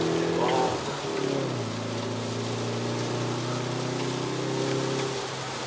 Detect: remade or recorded recorded